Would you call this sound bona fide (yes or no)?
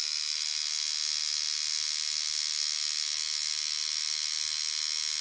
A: yes